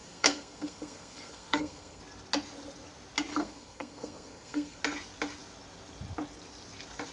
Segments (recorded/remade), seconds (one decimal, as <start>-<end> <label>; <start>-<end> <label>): 0.0-2.0 remade; 2.0-3.3 recorded; 3.3-4.8 remade; 4.8-7.1 recorded